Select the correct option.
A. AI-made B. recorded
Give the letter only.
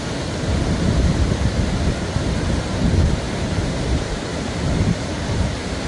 A